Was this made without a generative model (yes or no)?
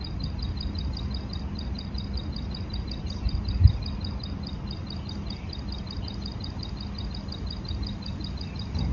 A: yes